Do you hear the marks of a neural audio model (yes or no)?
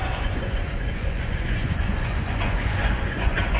yes